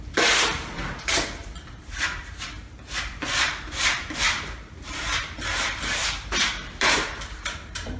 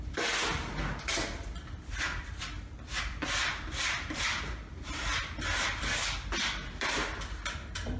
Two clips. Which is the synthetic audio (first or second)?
first